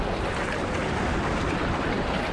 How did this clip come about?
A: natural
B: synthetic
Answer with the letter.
A